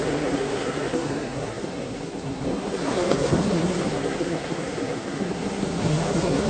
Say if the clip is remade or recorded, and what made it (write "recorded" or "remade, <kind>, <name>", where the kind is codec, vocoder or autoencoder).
remade, codec, SNAC